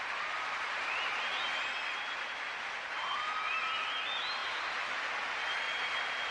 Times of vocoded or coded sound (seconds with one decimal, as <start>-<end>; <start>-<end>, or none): none